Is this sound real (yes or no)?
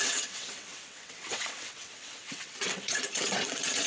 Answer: no